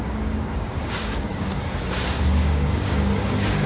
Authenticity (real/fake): fake